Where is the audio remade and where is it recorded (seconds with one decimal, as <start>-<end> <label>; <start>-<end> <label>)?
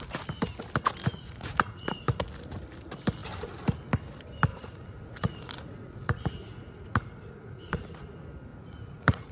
0.0-1.1 recorded; 1.1-2.2 remade; 2.2-4.5 recorded; 4.5-7.8 remade; 7.8-8.5 recorded; 8.5-9.3 remade